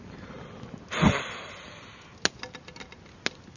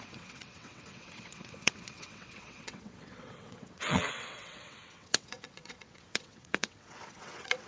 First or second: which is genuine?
first